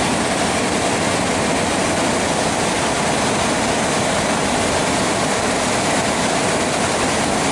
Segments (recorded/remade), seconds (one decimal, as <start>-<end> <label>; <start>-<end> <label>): 0.0-7.5 recorded